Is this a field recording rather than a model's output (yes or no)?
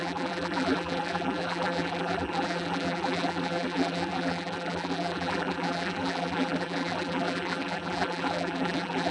no